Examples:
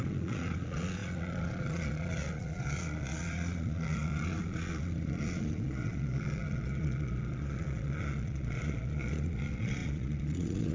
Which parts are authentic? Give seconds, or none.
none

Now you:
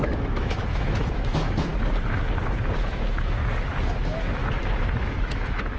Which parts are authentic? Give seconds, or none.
1.7-2.8; 3.4-4.0; 4.4-5.0

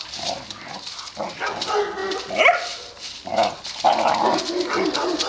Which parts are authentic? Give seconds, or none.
0.0-5.3